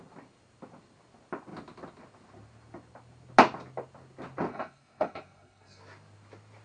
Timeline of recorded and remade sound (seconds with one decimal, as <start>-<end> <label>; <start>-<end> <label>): 0.0-4.5 recorded; 4.5-5.8 remade; 5.8-6.6 recorded